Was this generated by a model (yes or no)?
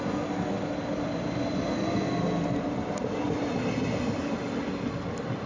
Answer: no